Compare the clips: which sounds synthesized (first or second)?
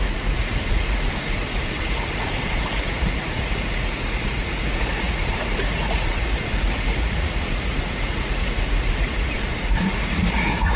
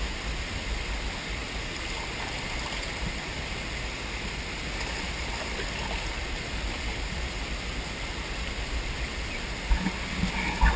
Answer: first